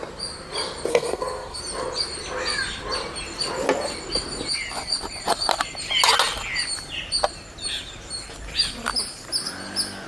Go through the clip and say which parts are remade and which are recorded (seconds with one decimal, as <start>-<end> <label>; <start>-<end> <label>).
0.0-0.9 recorded; 0.9-1.6 remade; 1.6-10.1 recorded

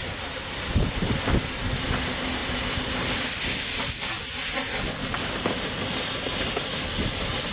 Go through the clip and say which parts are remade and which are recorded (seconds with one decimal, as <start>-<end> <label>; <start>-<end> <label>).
0.0-1.3 remade; 1.3-7.5 recorded

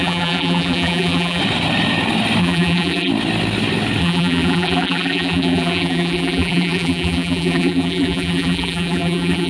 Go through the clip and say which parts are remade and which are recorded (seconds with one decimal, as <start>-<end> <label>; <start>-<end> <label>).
0.0-1.4 remade; 1.4-2.4 recorded; 2.4-3.1 remade; 3.1-4.0 recorded; 4.0-9.5 remade

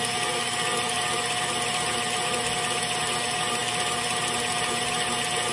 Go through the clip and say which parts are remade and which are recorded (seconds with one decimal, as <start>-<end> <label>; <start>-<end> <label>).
0.0-5.5 recorded

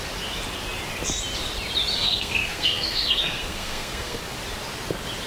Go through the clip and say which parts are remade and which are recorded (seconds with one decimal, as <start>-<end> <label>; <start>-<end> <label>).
0.0-1.9 recorded; 1.9-4.2 remade; 4.2-5.3 recorded

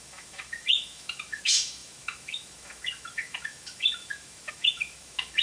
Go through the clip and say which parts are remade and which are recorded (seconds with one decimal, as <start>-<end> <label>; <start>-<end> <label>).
0.0-5.4 remade